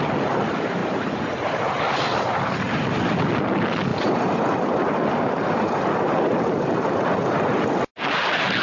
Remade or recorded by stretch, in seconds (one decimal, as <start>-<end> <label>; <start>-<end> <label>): 0.0-3.9 recorded; 3.9-4.9 remade; 4.9-8.6 recorded